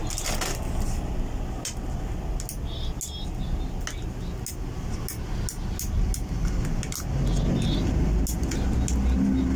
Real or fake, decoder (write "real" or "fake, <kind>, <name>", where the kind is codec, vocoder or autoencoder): real